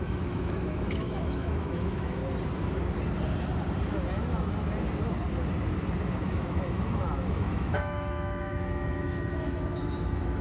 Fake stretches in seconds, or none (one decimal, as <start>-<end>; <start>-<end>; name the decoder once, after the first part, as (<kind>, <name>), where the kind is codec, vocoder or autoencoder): 0.0-2.2 (autoencoder, DAC-VAE); 6.2-10.4